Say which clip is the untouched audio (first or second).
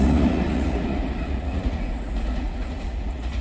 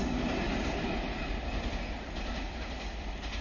second